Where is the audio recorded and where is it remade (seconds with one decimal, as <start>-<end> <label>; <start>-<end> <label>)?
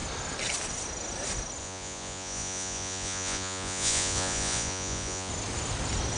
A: 0.0-1.6 recorded; 1.6-5.3 remade; 5.3-6.2 recorded